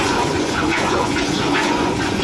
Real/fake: fake